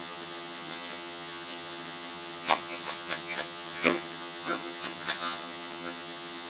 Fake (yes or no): yes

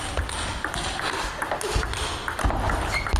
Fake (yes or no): no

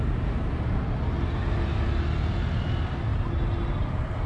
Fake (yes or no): no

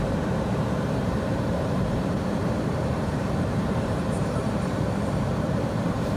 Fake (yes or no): yes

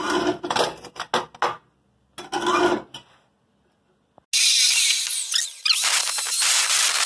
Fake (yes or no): no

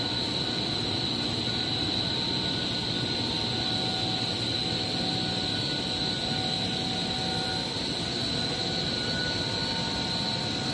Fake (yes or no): no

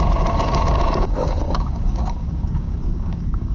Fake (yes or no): yes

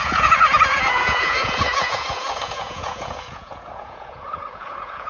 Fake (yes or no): yes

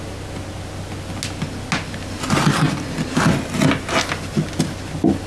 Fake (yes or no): no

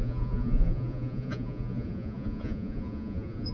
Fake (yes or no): yes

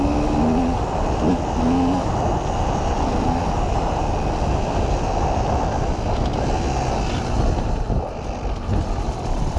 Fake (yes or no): no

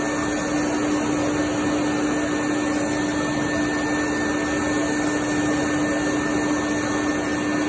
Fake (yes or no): no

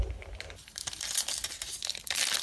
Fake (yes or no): no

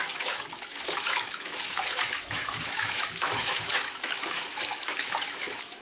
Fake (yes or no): yes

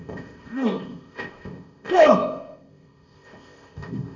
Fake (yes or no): yes